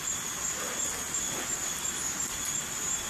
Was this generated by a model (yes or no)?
yes